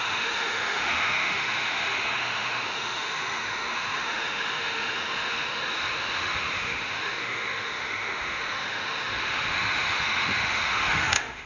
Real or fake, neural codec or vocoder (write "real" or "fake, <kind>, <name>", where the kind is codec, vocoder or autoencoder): fake, autoencoder, DAC-VAE